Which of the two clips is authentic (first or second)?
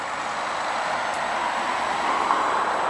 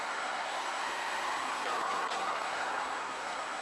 first